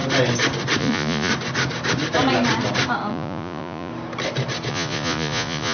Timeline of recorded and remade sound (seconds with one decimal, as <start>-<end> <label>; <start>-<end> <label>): 0.0-0.8 recorded; 0.8-1.3 remade; 1.3-3.1 recorded; 3.1-3.9 remade; 3.9-4.7 recorded; 4.7-5.7 remade